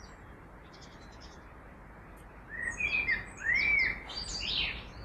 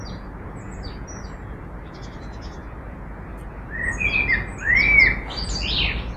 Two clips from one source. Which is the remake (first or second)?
first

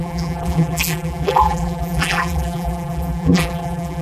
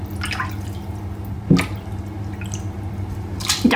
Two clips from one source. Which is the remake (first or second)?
first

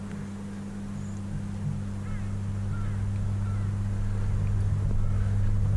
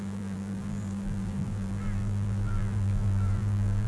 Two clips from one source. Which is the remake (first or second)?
second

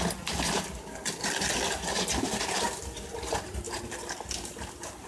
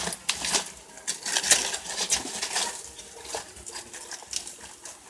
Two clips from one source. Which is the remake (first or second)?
first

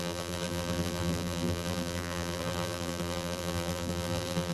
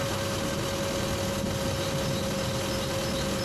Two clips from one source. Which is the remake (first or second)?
first